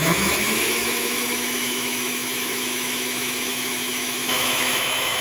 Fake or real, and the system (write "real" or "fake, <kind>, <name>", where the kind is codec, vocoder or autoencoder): fake, autoencoder, DAC-VAE